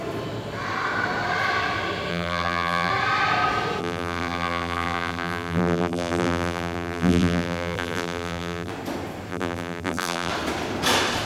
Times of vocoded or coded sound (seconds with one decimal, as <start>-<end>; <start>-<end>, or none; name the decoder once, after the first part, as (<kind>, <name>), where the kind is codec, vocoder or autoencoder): 2.1-2.9 (vocoder, BigVGAN v2); 3.8-8.7; 9.3-10.3